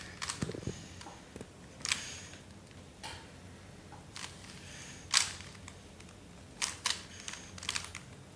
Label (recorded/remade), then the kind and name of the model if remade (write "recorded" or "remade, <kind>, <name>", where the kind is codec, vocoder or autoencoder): recorded